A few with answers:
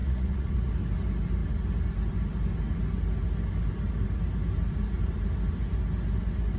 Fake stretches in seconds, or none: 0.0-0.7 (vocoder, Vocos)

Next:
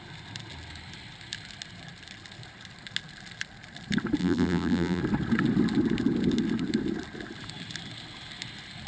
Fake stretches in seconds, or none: 4.2-5.0 (vocoder, BigVGAN v2)

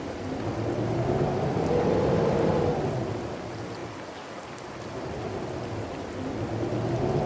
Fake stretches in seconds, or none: none

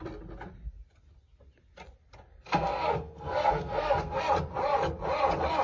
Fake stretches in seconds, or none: 2.3-4.2 (codec, SNAC)